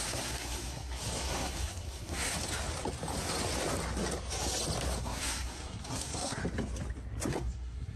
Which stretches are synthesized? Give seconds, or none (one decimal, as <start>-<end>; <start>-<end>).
0.0-2.3; 5.0-6.4; 7.3-8.0